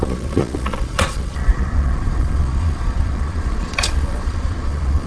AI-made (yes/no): yes